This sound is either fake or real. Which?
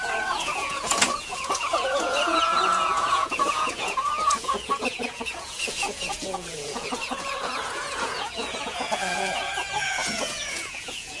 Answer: fake